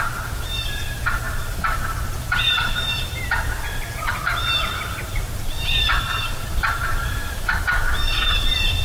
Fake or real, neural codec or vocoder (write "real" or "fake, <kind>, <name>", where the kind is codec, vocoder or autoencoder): fake, vocoder, BigVGAN v2